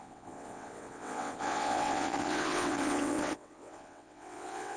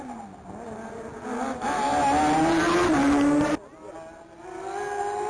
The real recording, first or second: second